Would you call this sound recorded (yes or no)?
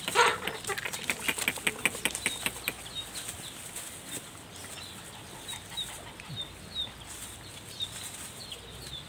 yes